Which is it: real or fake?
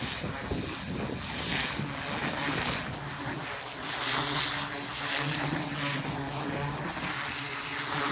real